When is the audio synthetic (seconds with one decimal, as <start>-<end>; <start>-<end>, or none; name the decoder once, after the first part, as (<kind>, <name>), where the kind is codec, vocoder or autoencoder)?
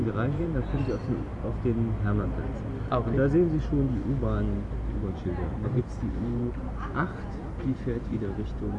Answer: 0.0-1.3 (vocoder, BigVGAN v2); 4.9-8.8